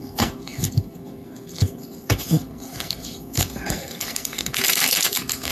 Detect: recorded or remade remade